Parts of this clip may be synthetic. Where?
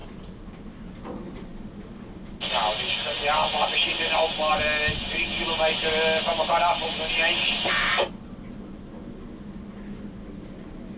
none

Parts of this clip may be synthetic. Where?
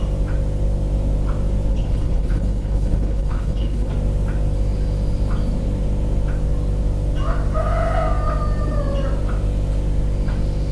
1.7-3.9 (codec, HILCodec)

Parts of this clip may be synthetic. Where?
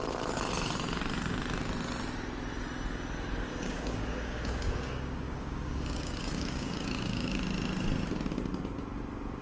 3.5-7.4 (codec, DAC)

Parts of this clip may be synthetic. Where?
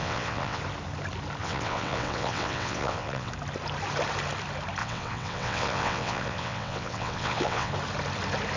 0.0-0.6 (vocoder, WaveNeXt); 1.4-3.3; 4.8-7.7